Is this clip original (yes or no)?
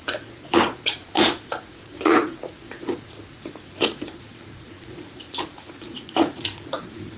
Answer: no